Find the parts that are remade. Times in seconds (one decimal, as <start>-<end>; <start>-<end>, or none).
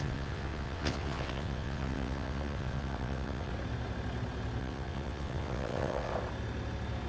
0.0-3.5; 4.6-6.1